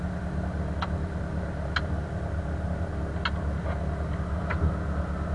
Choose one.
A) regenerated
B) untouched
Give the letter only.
B